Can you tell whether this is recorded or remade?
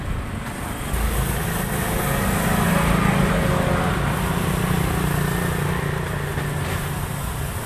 recorded